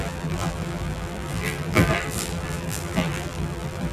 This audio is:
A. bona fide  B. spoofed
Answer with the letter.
B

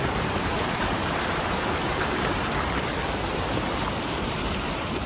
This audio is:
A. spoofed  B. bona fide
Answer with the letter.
A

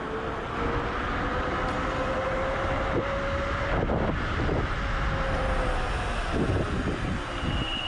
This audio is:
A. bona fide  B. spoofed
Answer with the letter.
A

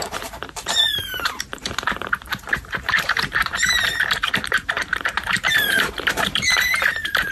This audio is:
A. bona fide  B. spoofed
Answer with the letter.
B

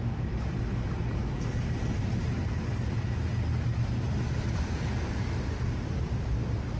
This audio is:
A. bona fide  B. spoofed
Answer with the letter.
B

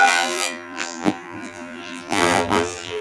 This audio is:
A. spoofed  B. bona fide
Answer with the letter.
A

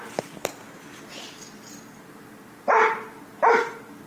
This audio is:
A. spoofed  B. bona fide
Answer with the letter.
B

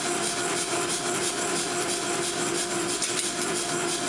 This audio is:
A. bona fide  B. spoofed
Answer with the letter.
A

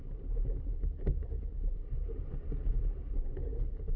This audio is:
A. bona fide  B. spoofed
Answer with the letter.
B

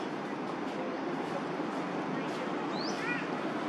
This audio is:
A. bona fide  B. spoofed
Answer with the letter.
A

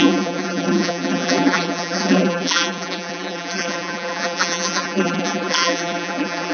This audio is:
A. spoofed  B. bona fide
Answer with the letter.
A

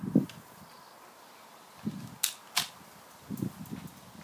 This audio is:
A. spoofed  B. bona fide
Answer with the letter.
B